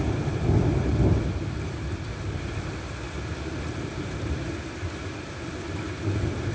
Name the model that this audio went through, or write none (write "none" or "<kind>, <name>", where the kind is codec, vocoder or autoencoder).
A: none